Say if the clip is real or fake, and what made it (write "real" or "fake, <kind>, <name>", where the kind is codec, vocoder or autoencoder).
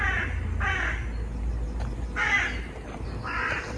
real